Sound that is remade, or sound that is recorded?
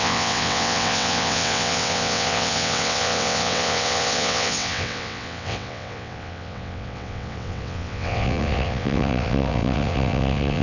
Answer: remade